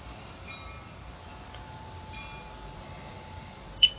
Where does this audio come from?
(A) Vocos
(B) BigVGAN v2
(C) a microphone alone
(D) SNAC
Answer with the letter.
B